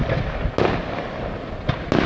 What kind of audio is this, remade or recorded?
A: recorded